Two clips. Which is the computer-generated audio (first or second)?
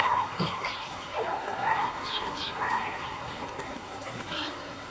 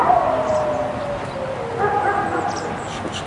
first